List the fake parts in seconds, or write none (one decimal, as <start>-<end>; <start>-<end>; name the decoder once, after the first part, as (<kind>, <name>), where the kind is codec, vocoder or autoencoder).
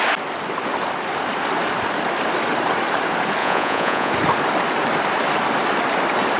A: 3.4-4.1 (vocoder, Vocos)